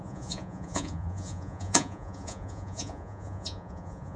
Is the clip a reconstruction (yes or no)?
yes